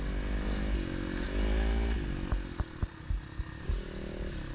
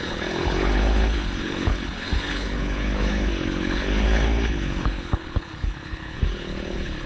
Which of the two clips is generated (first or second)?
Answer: second